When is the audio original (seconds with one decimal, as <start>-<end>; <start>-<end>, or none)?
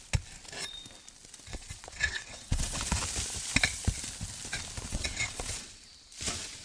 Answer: 0.0-1.5; 3.0-4.9; 5.8-6.6